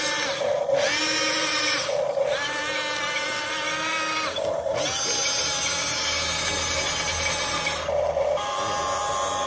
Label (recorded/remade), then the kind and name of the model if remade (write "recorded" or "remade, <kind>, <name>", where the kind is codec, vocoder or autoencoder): recorded